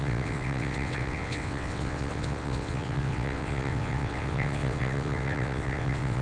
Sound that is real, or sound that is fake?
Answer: fake